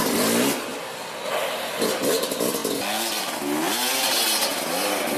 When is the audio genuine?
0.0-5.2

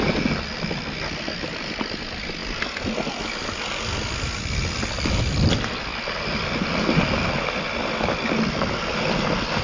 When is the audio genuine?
0.0-9.6

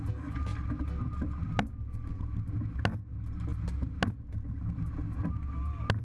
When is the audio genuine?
0.0-6.0